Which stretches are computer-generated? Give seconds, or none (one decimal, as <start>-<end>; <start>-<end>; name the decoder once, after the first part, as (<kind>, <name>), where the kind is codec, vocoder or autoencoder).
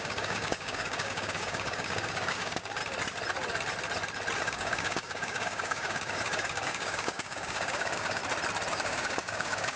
0.0-2.8 (codec, DAC); 4.4-8.2; 8.7-9.8